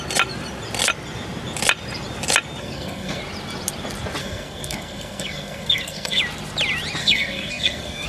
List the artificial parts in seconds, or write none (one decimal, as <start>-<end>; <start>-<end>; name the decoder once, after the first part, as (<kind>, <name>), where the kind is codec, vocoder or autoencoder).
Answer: 2.6-3.2 (codec, SNAC); 4.2-6.2; 7.0-8.1